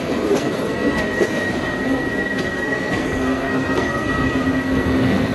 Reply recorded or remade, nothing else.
remade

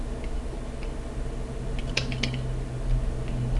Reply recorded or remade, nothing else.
recorded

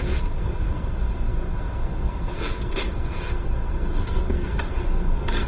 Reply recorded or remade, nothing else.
remade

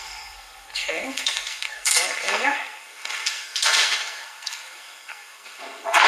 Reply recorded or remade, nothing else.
remade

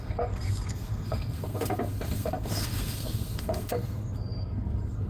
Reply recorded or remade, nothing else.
remade